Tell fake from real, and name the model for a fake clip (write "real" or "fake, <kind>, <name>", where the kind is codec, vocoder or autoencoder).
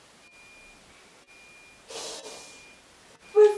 real